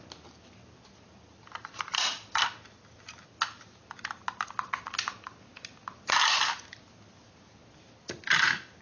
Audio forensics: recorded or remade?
recorded